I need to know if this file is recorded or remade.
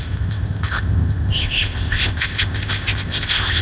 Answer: remade